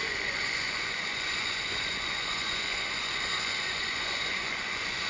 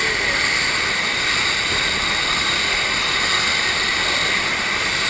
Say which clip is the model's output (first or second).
first